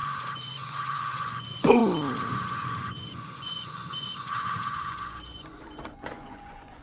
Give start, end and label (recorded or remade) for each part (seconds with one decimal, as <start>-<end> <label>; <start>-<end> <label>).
0.0-1.8 remade; 1.8-2.3 recorded; 2.3-6.8 remade